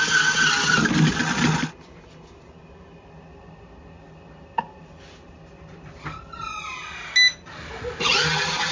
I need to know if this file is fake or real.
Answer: real